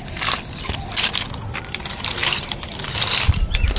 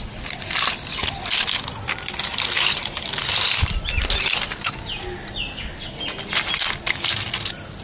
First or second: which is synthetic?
first